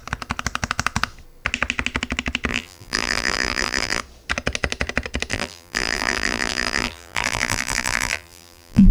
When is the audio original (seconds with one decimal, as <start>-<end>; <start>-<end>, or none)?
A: 0.0-2.5; 4.0-5.3